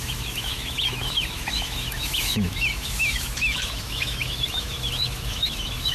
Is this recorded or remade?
remade